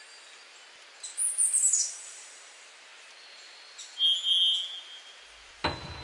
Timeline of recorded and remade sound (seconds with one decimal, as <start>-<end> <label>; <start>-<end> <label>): 0.0-6.0 recorded